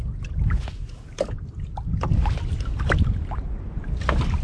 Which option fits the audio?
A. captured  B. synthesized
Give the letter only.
A